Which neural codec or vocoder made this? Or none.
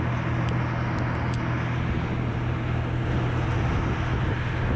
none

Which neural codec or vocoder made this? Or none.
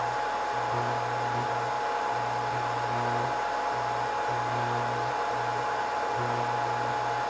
none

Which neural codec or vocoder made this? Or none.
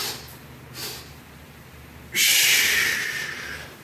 none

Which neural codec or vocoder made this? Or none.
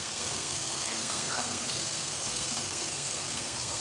codec, SNAC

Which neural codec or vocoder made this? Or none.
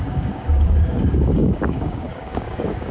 codec, DAC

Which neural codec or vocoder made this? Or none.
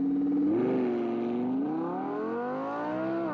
none